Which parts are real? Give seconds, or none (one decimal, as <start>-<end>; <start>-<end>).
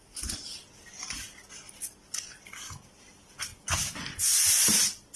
0.0-5.2